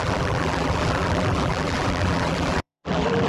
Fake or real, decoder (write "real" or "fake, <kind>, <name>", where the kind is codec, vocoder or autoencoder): fake, vocoder, BigVGAN v2